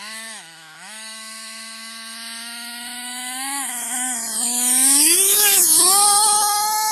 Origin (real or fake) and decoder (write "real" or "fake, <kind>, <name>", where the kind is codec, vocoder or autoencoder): fake, autoencoder, DAC-VAE